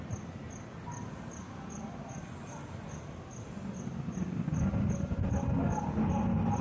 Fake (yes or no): no